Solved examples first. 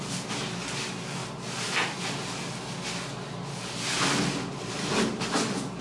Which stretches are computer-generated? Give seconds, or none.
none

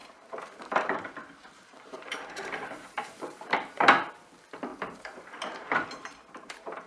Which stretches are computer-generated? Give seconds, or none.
0.0-4.1 (vocoder, BigVGAN v2); 4.7-6.9

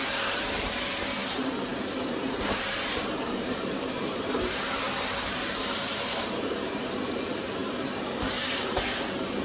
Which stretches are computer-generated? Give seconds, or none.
0.0-9.4 (vocoder, BigVGAN v2)

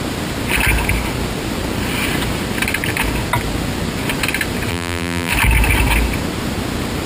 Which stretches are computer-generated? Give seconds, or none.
4.7-5.3 (vocoder, BigVGAN v2)

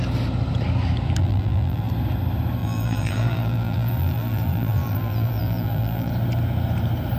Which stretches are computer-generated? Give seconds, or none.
1.2-1.9 (vocoder, BigVGAN v2); 2.6-6.1

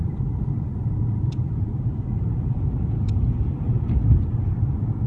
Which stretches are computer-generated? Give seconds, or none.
0.0-3.1 (vocoder, BigVGAN v2)

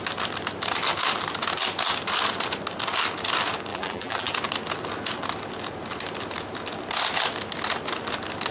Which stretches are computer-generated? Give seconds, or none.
3.7-4.3 (vocoder, BigVGAN v2)